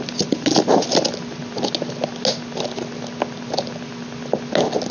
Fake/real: real